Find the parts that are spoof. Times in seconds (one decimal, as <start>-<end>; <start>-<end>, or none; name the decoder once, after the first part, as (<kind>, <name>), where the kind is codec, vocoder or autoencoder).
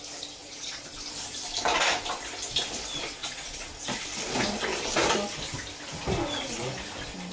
0.4-0.9 (vocoder, Vocos); 3.2-3.8